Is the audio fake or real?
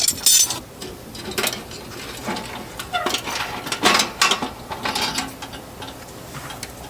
real